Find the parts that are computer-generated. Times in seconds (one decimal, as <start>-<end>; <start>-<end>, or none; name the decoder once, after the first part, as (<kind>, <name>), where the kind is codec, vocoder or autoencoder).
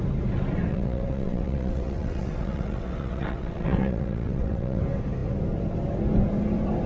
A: 0.7-4.8 (vocoder, WaveNeXt)